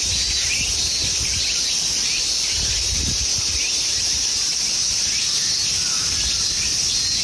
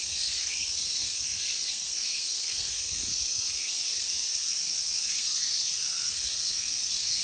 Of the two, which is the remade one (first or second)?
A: second